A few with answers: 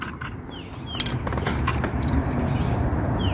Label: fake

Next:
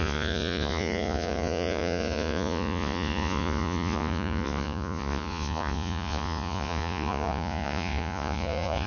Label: fake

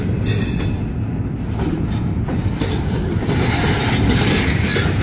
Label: real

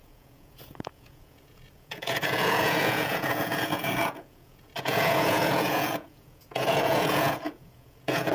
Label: fake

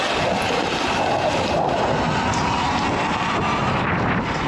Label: real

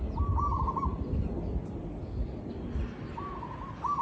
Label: real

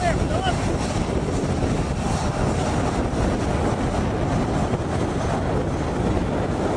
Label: real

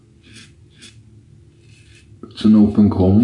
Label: real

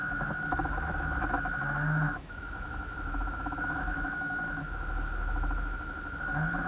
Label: fake